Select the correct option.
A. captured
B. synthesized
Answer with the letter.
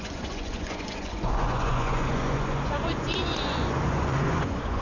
B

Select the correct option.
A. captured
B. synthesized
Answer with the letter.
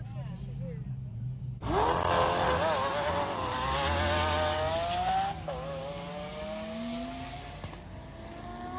A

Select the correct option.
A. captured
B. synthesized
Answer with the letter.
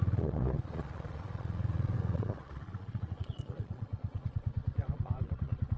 B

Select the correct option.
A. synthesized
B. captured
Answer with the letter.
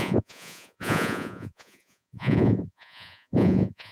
A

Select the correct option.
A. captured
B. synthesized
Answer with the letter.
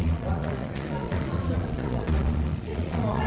B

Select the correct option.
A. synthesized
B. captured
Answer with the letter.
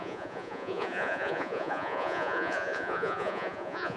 A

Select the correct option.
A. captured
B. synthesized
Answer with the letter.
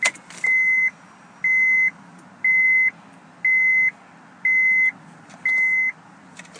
A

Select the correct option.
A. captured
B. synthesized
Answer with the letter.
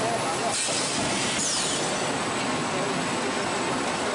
A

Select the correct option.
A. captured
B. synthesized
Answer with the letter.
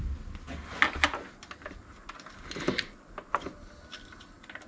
A